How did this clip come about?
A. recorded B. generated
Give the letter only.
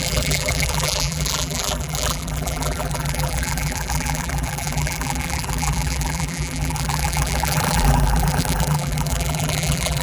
B